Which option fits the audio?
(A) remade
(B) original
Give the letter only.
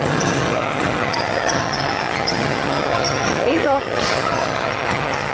A